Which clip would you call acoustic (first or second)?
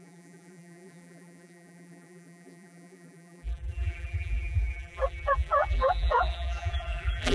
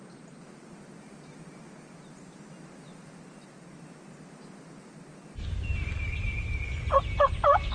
second